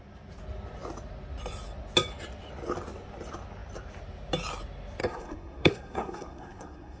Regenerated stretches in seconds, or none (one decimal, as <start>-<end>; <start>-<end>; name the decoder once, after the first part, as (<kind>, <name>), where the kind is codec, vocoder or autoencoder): 5.0-7.0 (codec, SNAC)